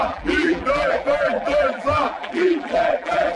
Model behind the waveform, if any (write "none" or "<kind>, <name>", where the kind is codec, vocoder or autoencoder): vocoder, BigVGAN v2